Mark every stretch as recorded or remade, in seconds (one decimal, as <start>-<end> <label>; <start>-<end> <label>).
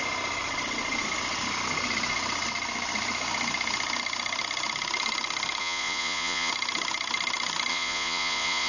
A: 0.0-5.6 recorded; 5.6-6.5 remade; 6.5-7.7 recorded; 7.7-8.7 remade